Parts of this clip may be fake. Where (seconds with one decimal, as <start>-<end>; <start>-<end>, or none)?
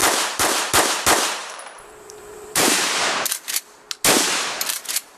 0.0-0.7; 1.4-3.6; 4.7-5.2